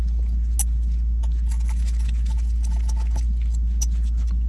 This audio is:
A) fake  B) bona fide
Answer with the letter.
B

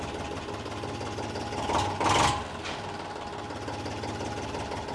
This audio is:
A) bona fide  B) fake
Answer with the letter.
A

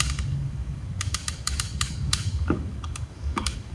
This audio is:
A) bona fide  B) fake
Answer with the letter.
B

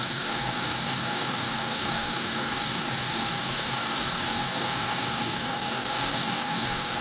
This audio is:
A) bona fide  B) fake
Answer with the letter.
B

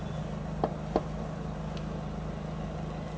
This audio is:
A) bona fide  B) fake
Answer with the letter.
A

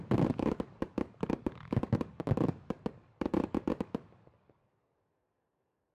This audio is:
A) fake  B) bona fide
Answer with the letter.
A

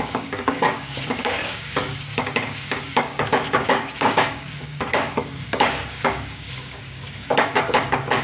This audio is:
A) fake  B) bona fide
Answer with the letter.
A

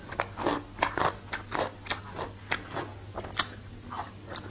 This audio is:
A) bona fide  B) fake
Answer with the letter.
A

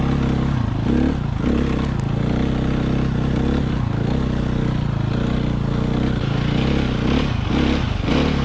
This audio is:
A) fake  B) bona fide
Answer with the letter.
B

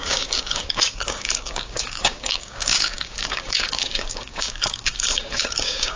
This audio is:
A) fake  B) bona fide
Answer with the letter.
A